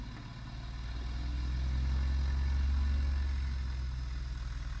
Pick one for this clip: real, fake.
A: real